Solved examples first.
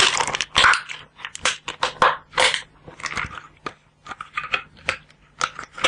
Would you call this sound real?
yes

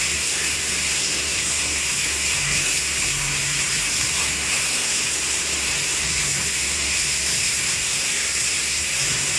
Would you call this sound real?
no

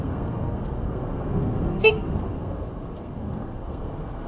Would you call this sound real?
no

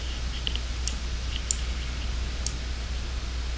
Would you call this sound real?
yes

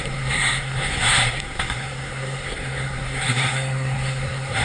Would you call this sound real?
no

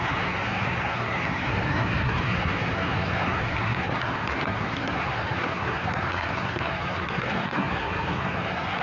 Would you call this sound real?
no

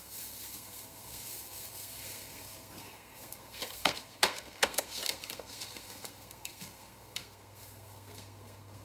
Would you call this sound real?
no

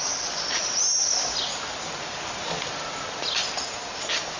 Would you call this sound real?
yes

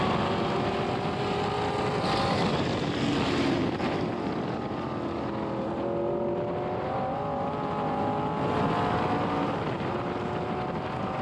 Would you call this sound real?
yes